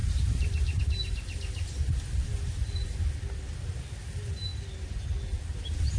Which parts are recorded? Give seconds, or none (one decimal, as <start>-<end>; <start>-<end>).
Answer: 0.8-6.0